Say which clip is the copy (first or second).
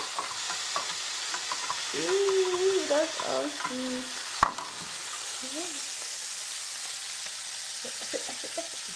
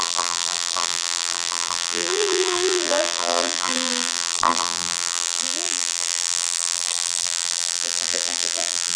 second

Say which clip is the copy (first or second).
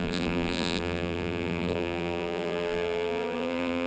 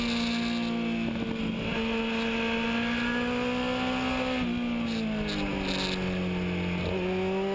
first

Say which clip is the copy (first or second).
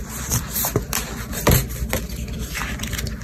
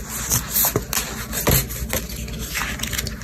first